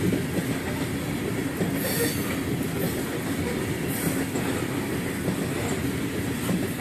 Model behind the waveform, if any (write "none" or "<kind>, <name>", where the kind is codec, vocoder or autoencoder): none